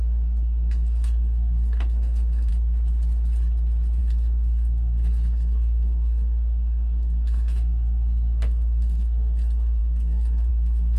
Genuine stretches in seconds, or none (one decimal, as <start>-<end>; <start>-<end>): 2.5-4.0